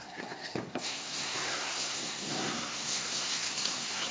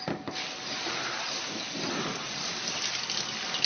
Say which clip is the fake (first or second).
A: first